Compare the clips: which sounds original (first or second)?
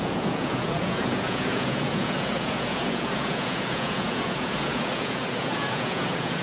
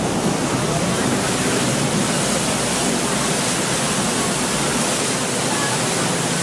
second